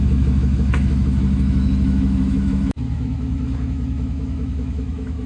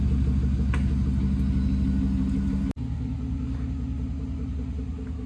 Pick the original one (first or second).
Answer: second